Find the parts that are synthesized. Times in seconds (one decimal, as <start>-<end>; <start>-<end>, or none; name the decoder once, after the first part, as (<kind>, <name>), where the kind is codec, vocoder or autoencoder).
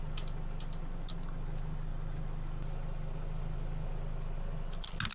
none